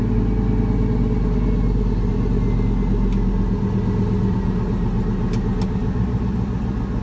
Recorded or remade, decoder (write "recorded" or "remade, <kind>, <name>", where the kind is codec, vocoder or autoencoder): recorded